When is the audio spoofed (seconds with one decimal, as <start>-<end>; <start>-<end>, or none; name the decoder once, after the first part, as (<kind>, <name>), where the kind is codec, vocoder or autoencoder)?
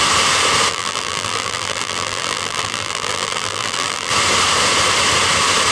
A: 0.7-4.1 (vocoder, BigVGAN v2)